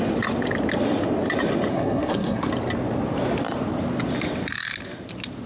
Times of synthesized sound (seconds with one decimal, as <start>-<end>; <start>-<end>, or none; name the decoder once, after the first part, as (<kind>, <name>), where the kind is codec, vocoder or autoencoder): 1.7-2.5 (codec, SNAC)